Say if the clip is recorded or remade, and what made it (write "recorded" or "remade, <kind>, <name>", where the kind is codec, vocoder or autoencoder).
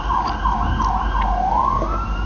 recorded